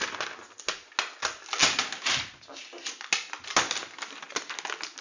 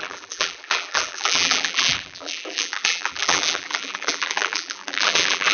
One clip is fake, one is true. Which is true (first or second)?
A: first